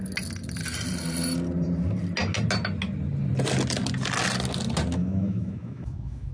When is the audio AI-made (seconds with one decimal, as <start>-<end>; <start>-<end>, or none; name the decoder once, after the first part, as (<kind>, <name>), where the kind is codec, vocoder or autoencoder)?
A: 5.0-6.3 (autoencoder, DAC-VAE)